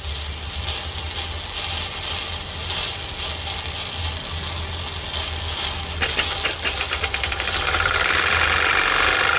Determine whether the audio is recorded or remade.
recorded